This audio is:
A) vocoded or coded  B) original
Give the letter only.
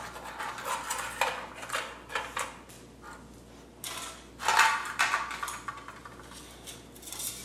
B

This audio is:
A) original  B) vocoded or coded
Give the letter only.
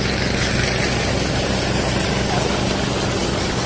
A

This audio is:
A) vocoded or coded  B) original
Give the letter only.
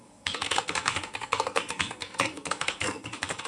A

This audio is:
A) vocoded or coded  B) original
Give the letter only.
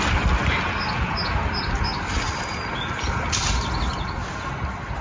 B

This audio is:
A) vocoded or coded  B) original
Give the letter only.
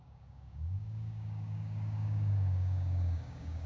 A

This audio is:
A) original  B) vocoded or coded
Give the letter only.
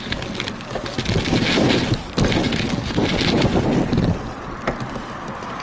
A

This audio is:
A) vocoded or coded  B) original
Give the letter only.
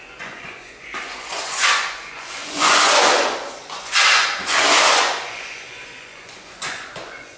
A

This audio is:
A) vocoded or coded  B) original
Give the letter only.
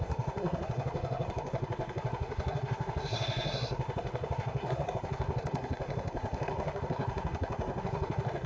A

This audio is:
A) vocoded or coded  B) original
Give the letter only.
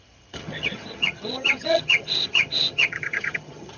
A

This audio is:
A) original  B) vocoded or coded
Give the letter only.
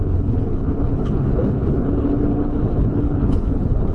B